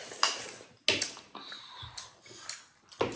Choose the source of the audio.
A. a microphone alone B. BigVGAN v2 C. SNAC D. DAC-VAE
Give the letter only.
A